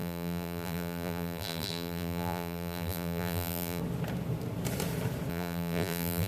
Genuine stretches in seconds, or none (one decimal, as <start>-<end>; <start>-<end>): 3.8-5.3